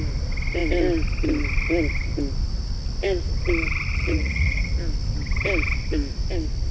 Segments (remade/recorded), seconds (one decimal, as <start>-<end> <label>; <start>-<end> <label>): 0.0-3.9 recorded; 3.9-4.7 remade; 4.7-6.7 recorded